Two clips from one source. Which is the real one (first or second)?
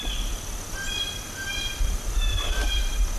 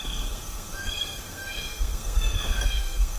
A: first